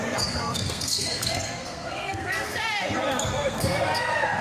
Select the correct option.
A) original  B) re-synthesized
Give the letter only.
B